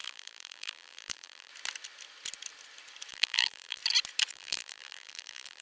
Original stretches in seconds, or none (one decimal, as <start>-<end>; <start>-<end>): 1.5-3.1; 3.8-4.3